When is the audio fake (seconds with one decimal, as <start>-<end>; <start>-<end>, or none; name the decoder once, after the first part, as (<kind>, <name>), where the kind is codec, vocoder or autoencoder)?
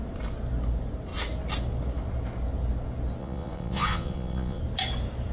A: 3.2-4.6 (vocoder, Vocos)